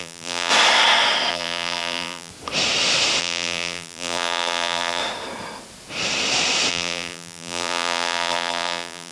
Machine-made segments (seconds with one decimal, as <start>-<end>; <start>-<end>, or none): 0.0-0.5; 1.3-2.3; 3.2-5.0; 6.7-9.1